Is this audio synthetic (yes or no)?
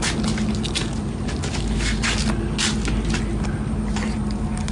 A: no